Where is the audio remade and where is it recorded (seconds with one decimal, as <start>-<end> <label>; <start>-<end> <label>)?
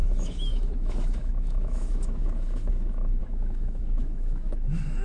0.0-5.0 remade